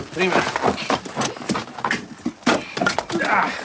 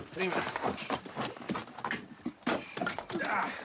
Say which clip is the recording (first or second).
first